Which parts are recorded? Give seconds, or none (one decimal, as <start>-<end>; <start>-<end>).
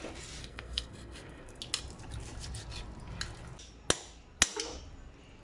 0.0-0.4; 1.6-5.4